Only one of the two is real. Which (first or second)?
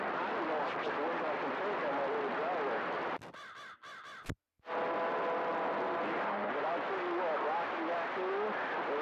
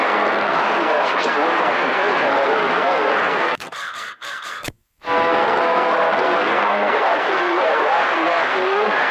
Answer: first